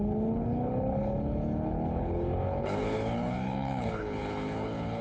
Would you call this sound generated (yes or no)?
yes